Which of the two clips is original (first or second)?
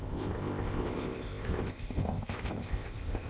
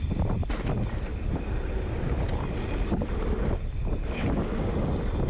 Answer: second